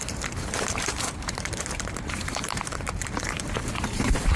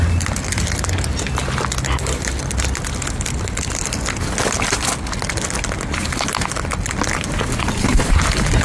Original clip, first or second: second